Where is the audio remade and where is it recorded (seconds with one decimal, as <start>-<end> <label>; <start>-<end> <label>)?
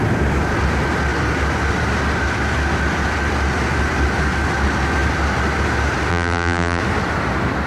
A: 0.0-6.1 recorded; 6.1-6.8 remade; 6.8-7.7 recorded